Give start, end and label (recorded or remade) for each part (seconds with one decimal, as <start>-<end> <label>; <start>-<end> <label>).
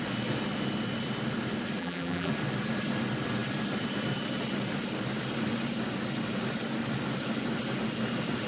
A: 0.0-1.8 recorded; 1.8-2.3 remade; 2.3-8.5 recorded